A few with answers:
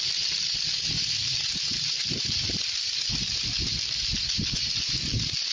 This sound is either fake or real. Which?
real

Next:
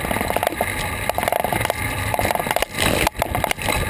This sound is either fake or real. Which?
real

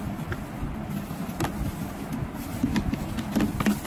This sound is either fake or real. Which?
real